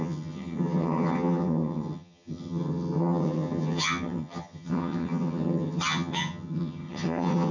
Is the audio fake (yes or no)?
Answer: yes